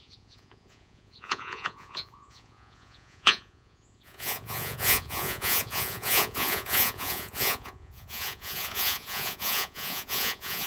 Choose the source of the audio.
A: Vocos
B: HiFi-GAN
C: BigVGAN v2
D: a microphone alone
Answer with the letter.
A